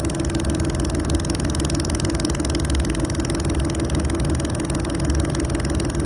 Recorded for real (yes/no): yes